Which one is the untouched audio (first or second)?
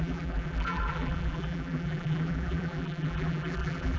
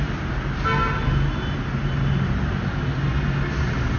second